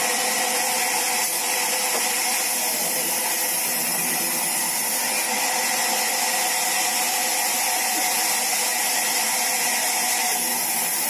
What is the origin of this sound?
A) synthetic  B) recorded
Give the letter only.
B